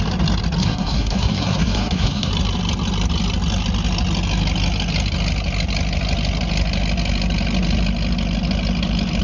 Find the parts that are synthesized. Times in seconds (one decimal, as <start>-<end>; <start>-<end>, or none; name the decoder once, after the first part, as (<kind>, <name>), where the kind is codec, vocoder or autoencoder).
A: 0.6-2.3 (codec, SNAC)